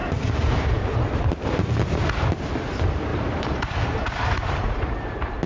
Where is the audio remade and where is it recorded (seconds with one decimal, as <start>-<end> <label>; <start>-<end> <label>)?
0.0-1.2 remade; 1.2-3.1 recorded; 3.1-4.9 remade; 4.9-5.5 recorded